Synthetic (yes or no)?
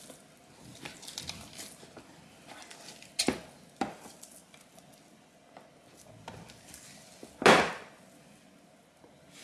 no